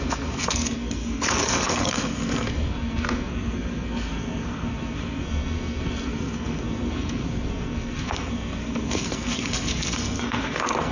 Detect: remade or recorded remade